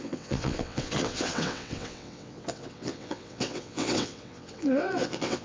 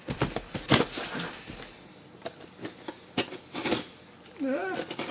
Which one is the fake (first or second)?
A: first